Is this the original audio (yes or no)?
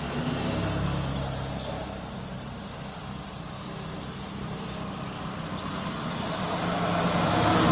yes